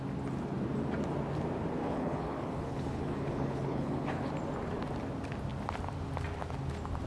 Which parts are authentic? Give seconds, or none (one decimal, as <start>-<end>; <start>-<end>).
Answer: 0.0-1.8; 4.3-7.1